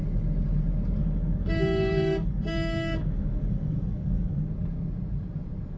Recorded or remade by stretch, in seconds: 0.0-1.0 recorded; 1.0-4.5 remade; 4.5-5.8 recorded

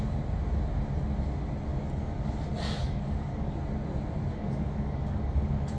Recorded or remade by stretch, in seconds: 0.0-1.7 recorded; 1.7-2.3 remade; 2.3-2.8 recorded; 2.8-3.6 remade; 3.6-4.3 recorded; 4.3-5.8 remade

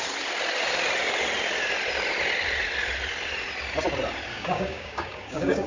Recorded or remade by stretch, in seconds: 0.0-4.3 recorded; 4.3-5.7 remade